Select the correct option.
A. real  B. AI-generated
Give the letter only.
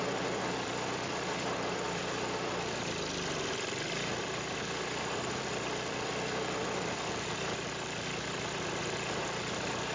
B